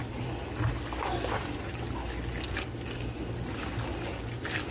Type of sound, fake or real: real